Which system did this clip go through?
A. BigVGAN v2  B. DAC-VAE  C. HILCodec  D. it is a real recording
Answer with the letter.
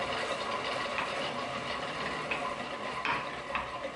D